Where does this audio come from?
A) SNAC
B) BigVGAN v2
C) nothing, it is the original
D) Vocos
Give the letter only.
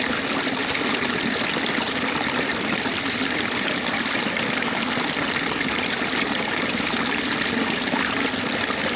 C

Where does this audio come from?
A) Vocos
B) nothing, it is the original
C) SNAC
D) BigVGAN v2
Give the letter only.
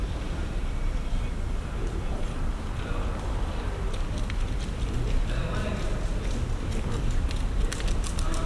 D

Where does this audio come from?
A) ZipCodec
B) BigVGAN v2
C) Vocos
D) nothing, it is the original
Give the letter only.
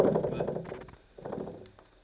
D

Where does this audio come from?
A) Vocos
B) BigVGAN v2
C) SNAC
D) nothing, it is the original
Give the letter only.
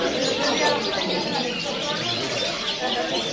B